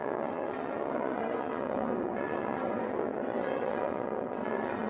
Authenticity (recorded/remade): remade